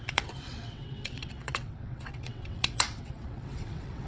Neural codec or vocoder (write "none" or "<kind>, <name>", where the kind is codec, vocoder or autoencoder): vocoder, WaveNeXt